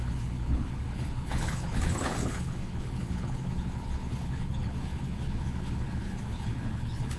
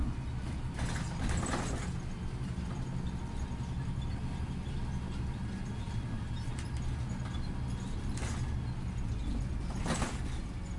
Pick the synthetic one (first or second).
first